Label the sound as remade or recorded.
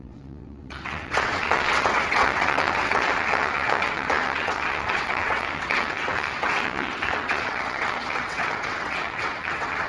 remade